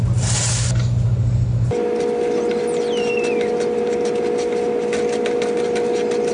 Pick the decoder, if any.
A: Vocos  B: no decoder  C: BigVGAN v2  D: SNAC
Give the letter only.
C